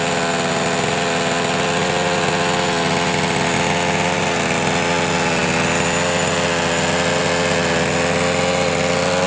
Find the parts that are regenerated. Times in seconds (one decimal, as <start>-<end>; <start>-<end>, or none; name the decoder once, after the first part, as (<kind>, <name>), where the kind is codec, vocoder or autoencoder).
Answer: none